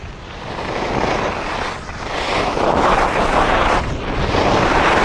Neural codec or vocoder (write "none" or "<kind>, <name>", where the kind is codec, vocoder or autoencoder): none